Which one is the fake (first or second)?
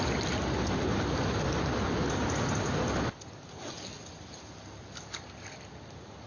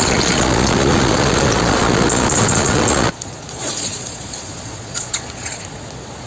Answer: second